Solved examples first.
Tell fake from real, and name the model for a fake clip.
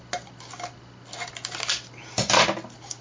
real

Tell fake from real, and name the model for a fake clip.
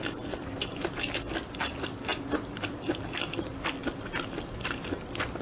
real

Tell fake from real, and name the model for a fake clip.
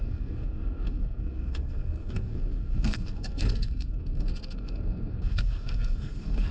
fake, codec, SNAC